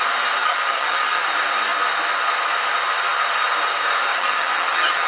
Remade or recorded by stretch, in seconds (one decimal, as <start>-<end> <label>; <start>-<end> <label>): 0.0-0.4 recorded; 0.4-1.2 remade; 1.2-4.1 recorded; 4.1-5.1 remade